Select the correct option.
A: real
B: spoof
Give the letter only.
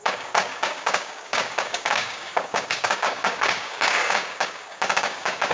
B